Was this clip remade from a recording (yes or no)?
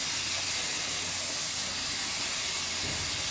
no